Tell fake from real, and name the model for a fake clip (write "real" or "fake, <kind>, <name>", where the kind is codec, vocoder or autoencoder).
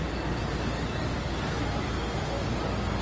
real